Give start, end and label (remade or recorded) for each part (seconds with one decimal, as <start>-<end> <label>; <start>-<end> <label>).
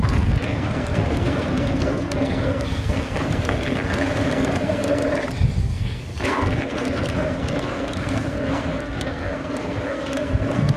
0.0-5.0 remade; 5.0-5.6 recorded; 5.6-10.8 remade